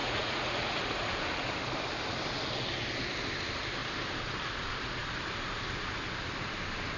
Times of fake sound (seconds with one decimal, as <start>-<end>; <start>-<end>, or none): 0.0-0.8

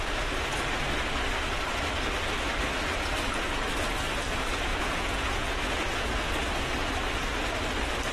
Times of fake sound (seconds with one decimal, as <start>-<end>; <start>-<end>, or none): 4.7-6.7

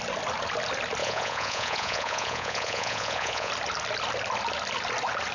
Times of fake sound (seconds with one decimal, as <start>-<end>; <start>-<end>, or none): 1.0-3.5